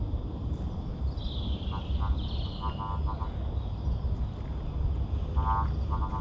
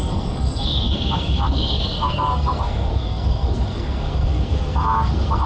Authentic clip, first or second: first